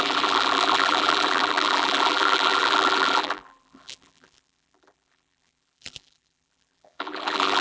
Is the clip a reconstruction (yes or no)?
yes